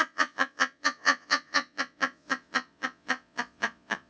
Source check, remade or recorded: remade